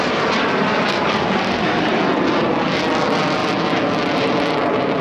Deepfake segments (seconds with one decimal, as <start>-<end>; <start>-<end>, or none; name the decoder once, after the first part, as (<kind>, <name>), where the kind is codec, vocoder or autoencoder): 0.7-1.9 (codec, DAC)